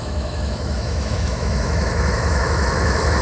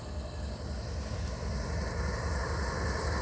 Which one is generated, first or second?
first